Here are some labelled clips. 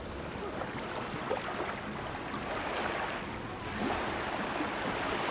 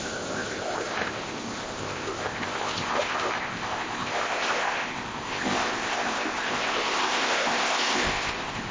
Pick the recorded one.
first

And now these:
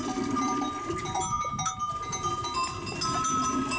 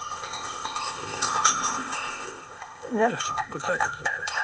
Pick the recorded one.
first